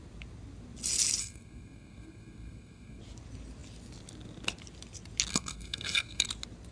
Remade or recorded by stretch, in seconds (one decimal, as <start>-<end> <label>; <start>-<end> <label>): 0.0-1.2 recorded; 1.2-3.0 remade; 3.0-5.3 recorded; 5.3-6.3 remade; 6.3-6.7 recorded